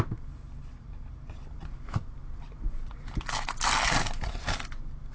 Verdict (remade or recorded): recorded